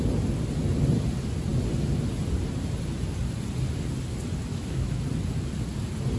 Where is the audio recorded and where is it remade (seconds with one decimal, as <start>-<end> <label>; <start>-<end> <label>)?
0.0-4.5 recorded; 4.5-5.0 remade; 5.0-6.2 recorded

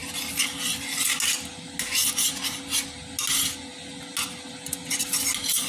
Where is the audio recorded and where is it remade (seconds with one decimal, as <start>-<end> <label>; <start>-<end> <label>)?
0.0-5.7 recorded

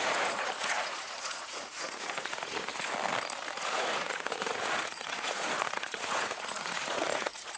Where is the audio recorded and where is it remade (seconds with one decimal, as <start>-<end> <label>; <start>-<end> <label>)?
0.0-2.7 remade; 2.7-3.5 recorded; 3.5-7.6 remade

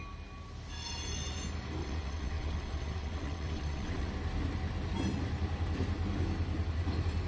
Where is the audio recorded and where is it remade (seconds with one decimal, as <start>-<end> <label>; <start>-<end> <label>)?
0.0-1.8 recorded; 1.8-4.1 remade; 4.1-7.3 recorded

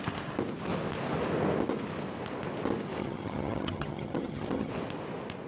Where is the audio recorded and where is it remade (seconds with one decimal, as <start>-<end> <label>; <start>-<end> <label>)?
0.0-3.0 recorded; 3.0-4.7 remade; 4.7-5.5 recorded

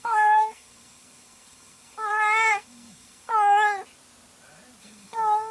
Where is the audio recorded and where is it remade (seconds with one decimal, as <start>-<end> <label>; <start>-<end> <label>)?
0.0-3.3 remade; 3.3-4.8 recorded; 4.8-5.5 remade